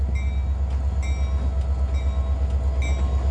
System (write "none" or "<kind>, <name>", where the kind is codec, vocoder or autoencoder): none